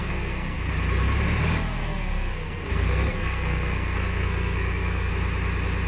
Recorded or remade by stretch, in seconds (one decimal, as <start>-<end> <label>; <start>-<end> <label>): 0.0-0.7 remade; 0.7-1.8 recorded; 1.8-5.1 remade; 5.1-5.9 recorded